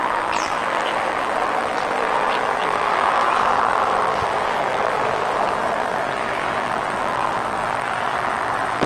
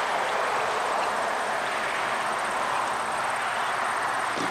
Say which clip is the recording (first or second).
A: second